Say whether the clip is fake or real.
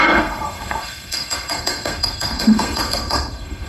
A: fake